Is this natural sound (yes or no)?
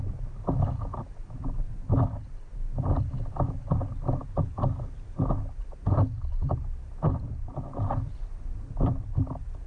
yes